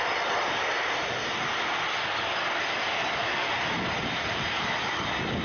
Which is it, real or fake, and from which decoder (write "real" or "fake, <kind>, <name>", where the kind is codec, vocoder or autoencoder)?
real